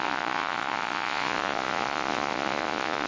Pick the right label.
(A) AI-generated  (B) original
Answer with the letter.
A